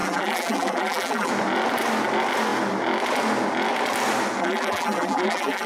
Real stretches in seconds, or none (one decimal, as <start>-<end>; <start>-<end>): 1.3-4.4